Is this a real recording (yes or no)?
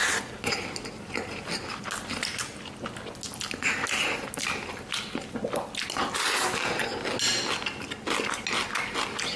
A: yes